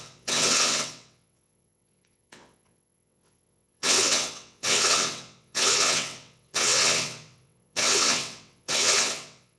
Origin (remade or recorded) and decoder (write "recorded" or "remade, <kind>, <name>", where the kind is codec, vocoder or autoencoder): remade, vocoder, WaveNeXt